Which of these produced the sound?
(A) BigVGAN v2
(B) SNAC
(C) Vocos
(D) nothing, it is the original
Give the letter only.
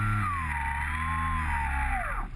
D